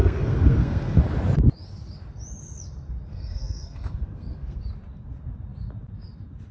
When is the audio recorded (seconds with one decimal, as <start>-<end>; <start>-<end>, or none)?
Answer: 1.0-3.1; 4.6-6.5